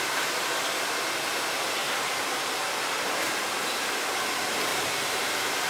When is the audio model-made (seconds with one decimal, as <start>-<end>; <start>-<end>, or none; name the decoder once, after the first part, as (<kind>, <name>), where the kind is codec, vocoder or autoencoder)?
1.8-3.8 (vocoder, BigVGAN v2); 4.7-5.7